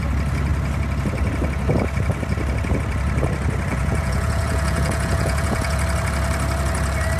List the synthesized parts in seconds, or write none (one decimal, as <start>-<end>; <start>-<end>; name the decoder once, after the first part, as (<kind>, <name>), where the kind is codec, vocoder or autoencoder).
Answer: 3.7-5.8 (vocoder, Vocos)